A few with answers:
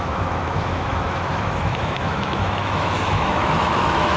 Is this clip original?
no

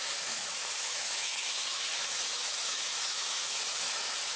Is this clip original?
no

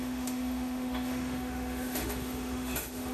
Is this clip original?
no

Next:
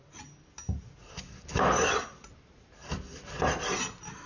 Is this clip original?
yes